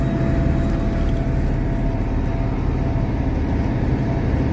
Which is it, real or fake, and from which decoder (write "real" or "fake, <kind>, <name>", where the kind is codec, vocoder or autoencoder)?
real